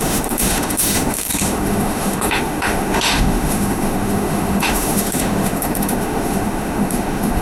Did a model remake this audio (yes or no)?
yes